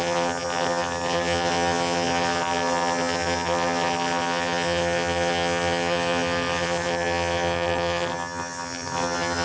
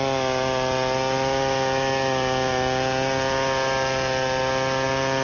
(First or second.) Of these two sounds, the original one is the second